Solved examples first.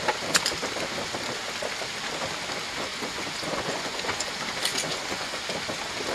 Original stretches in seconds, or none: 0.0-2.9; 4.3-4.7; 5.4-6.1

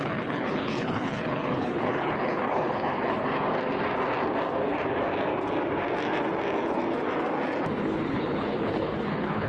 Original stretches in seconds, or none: 3.2-7.8

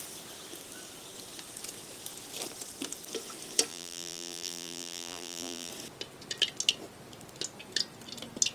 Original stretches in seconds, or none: 0.0-3.7; 5.7-8.5

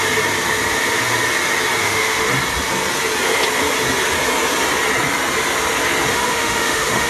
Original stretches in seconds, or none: 0.0-1.8; 2.3-6.1

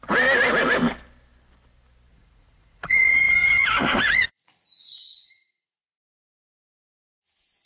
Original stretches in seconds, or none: 0.0-2.1; 6.2-7.7

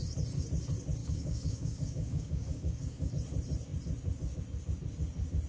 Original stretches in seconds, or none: 0.0-1.0; 3.1-5.5

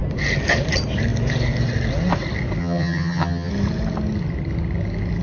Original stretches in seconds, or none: 0.0-2.6; 3.5-5.2